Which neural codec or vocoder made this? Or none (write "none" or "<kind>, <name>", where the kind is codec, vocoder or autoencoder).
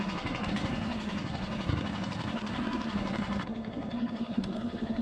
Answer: codec, SNAC